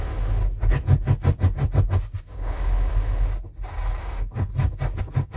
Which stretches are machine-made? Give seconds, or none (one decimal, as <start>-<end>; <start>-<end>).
0.0-0.4; 2.2-3.3; 4.0-4.5; 5.0-5.4